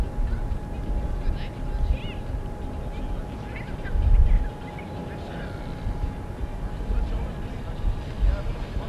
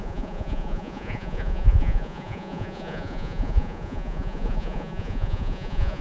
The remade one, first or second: second